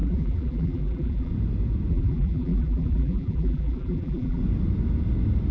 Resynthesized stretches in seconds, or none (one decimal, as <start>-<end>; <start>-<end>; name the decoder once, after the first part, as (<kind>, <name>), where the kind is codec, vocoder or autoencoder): 0.0-1.3 (vocoder, BigVGAN v2); 1.9-4.4